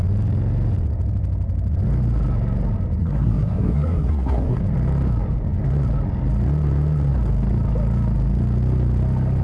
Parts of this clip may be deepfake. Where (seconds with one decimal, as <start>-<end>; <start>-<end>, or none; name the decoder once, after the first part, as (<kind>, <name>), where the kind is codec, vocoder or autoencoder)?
3.0-4.6 (codec, SNAC)